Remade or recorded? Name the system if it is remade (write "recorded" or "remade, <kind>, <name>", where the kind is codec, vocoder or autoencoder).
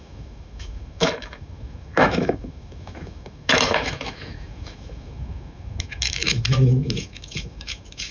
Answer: remade, autoencoder, DAC-VAE